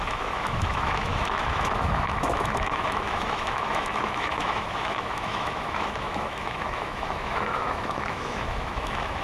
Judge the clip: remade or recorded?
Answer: remade